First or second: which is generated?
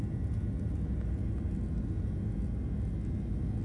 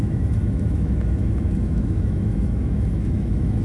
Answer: second